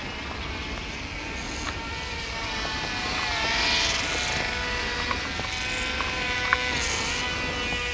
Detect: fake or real real